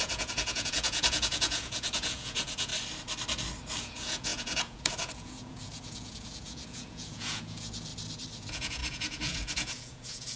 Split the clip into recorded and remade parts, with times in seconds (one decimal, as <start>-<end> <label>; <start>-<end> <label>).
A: 0.0-2.7 remade; 2.7-3.8 recorded; 3.8-7.9 remade; 7.9-8.4 recorded; 8.4-10.4 remade